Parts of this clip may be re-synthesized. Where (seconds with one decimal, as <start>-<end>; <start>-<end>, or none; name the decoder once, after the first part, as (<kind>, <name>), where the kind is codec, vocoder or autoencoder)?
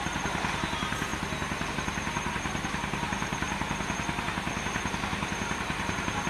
0.0-1.1 (vocoder, BigVGAN v2); 1.7-6.3